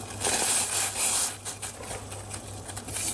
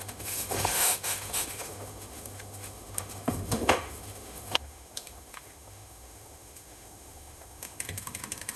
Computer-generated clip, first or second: second